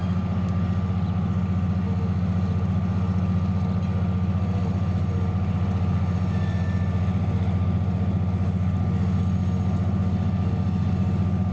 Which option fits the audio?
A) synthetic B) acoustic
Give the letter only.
B